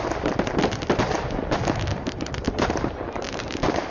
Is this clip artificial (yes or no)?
no